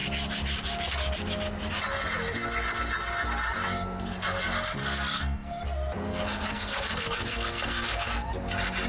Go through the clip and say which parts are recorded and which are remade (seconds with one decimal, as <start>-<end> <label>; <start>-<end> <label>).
0.0-4.8 recorded; 4.8-5.6 remade; 5.6-6.0 recorded; 6.0-8.3 remade; 8.3-8.9 recorded